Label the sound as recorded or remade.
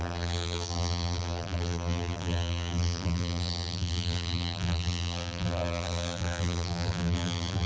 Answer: remade